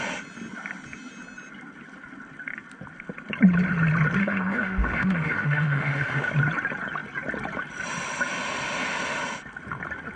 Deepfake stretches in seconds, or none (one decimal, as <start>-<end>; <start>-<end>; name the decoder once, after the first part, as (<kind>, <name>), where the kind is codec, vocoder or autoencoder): 4.2-6.3 (autoencoder, DAC-VAE)